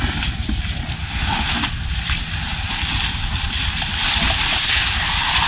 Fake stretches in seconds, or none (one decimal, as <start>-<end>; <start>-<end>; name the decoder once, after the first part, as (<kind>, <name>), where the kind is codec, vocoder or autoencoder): 1.0-1.7 (autoencoder, DAC-VAE)